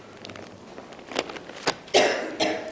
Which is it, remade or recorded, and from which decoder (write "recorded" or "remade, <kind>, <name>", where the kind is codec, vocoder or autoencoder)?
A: recorded